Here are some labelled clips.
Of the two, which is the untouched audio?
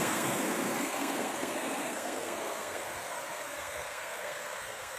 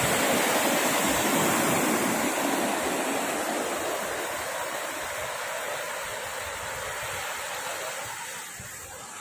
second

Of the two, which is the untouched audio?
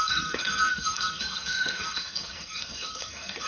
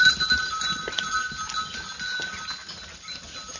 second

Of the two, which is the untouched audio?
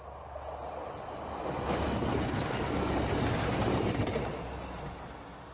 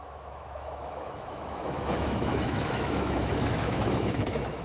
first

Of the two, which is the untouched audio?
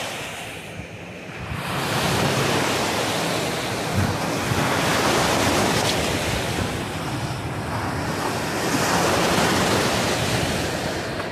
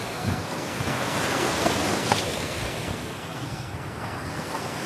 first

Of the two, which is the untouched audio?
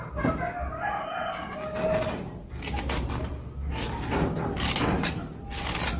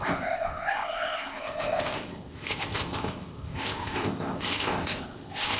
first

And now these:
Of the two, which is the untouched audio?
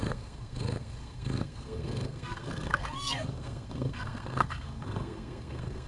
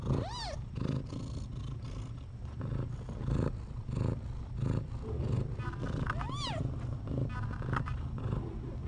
second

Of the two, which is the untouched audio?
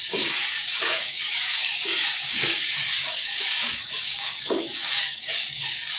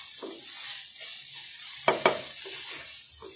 second